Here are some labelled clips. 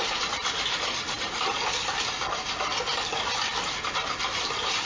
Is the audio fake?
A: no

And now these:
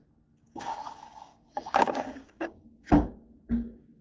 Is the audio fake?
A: yes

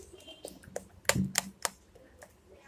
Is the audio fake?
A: no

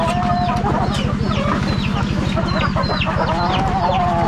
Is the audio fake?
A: no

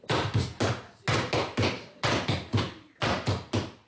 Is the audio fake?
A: no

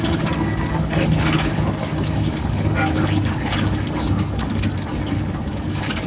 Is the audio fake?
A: yes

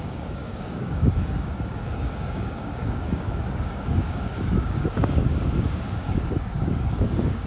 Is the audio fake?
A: yes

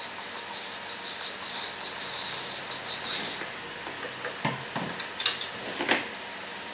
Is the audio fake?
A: no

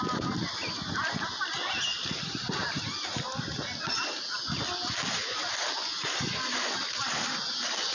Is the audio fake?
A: no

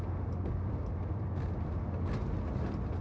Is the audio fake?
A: no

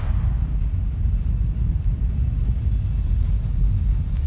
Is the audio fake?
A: no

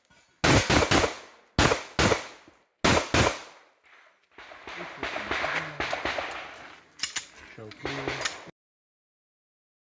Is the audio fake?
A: no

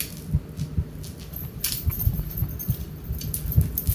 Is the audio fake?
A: no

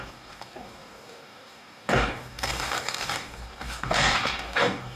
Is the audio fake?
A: yes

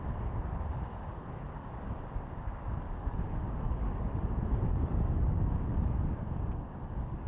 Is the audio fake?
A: yes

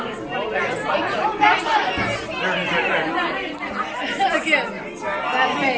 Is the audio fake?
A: no